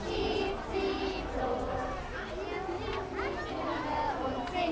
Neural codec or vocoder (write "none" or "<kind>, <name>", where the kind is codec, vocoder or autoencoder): none